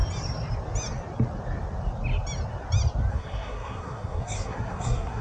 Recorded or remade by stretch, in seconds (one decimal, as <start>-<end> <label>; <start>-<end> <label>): 0.0-3.1 recorded; 3.1-5.2 remade